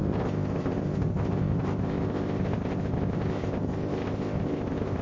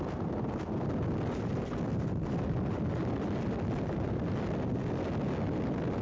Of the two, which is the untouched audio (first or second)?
second